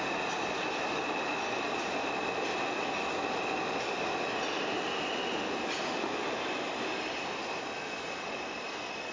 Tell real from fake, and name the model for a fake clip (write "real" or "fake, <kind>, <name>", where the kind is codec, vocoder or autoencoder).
real